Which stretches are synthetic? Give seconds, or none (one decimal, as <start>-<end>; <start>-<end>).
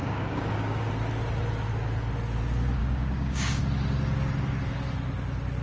0.0-0.9; 2.8-3.6